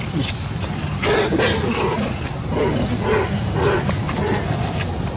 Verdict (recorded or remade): recorded